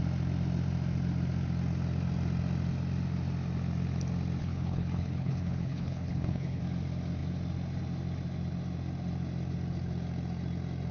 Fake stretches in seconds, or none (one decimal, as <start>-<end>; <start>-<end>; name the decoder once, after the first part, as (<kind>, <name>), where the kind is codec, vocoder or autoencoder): 4.4-6.6 (codec, HILCodec)